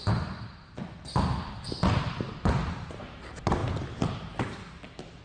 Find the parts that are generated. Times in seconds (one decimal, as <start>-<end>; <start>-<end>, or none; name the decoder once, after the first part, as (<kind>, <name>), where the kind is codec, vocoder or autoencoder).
none